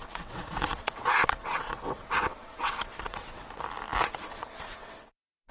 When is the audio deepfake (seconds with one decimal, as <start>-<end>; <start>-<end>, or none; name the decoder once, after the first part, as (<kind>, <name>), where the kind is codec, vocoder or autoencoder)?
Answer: 0.0-3.4 (vocoder, WaveNeXt); 4.0-5.5